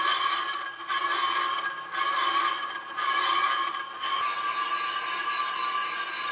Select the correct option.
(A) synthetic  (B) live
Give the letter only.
B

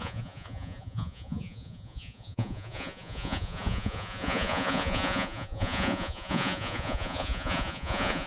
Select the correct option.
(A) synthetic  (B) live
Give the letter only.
A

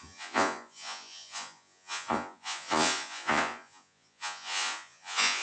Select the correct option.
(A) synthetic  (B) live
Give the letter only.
A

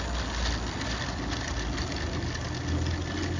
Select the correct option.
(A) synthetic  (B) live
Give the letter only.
B